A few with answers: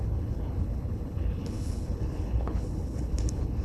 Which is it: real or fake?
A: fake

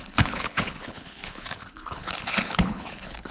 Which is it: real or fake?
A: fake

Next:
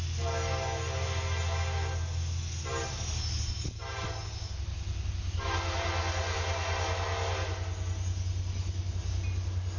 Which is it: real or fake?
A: real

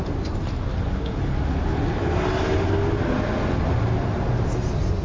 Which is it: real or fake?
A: real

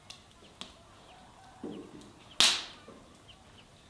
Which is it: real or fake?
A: real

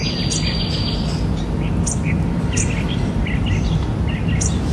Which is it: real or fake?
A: real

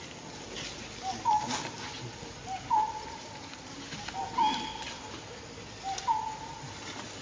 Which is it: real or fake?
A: real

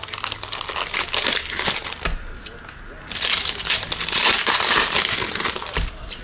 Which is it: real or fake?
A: real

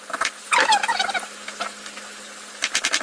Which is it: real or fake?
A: real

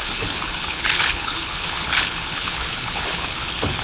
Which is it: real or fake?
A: fake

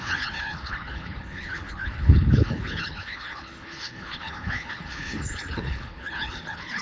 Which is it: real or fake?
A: fake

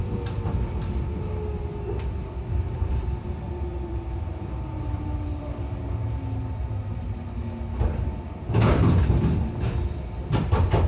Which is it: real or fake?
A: real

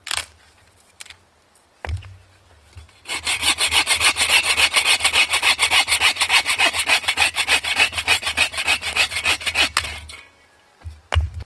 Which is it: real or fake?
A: real